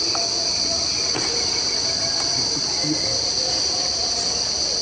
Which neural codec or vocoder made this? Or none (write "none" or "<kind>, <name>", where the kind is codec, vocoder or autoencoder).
none